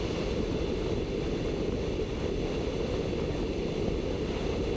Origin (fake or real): real